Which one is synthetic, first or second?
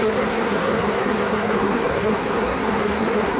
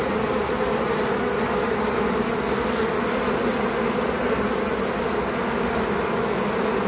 first